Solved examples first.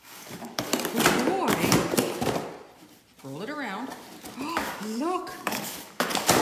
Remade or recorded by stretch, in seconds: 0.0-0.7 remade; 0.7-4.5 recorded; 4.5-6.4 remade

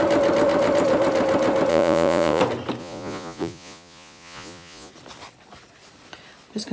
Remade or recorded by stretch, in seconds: 0.0-1.7 recorded; 1.7-2.4 remade; 2.4-2.8 recorded; 2.8-4.9 remade; 4.9-6.7 recorded

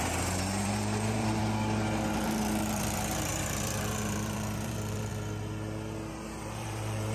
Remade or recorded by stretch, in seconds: 0.0-1.4 remade; 1.4-2.1 recorded; 2.1-5.1 remade; 5.1-6.1 recorded; 6.1-7.1 remade

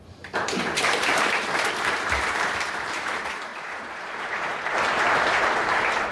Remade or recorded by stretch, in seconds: 0.0-6.1 remade

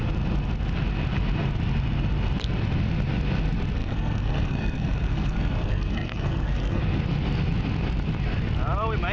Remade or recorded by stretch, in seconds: 0.0-3.8 recorded; 3.8-6.8 remade; 6.8-9.1 recorded